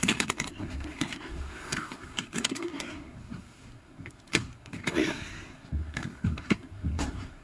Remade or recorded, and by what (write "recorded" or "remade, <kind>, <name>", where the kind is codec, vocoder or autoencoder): remade, codec, SNAC